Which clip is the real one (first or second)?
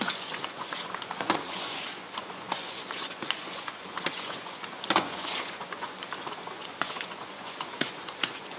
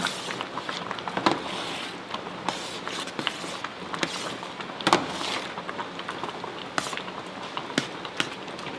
second